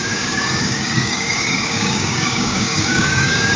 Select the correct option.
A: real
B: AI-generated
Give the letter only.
B